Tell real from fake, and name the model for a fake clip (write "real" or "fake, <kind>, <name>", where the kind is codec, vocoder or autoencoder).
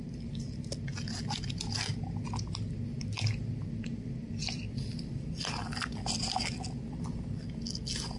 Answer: real